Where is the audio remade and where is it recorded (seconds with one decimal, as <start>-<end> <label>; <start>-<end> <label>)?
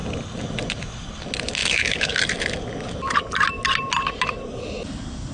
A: 0.0-1.6 recorded; 1.6-2.2 remade; 2.2-5.3 recorded